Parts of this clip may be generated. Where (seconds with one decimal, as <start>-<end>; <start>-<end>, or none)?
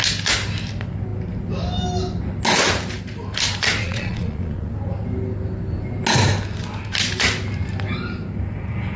3.8-4.7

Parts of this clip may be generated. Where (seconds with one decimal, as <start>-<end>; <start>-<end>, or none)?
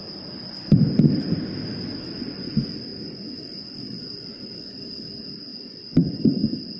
2.9-4.8; 5.5-6.2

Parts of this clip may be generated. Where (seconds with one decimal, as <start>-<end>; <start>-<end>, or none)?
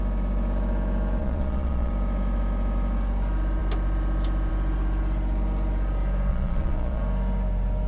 1.2-1.9; 6.3-7.0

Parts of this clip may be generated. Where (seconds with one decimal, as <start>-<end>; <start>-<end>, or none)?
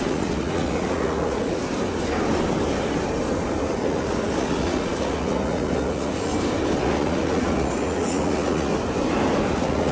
0.0-1.6; 3.7-6.3; 6.8-8.7; 9.5-9.9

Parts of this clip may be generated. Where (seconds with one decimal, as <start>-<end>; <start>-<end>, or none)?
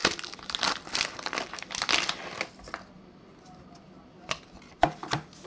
none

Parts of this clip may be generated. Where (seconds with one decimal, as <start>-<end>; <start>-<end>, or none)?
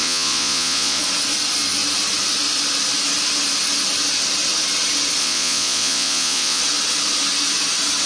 0.0-1.0; 5.2-6.6